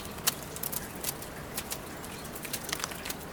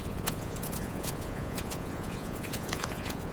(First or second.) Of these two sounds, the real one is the first